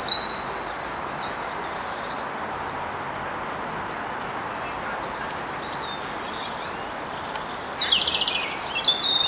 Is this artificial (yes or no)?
no